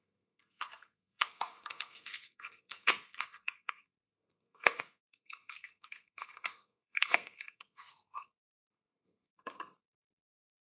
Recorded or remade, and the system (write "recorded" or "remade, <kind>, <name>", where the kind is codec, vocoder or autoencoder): remade, codec, SNAC